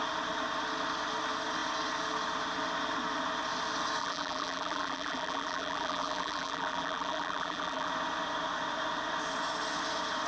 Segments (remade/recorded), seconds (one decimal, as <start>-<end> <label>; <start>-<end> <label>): 0.0-4.0 recorded; 4.0-7.9 remade; 7.9-10.3 recorded